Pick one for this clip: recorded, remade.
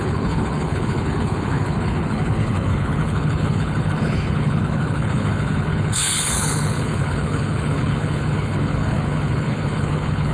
remade